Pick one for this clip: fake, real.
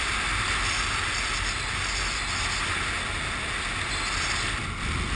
real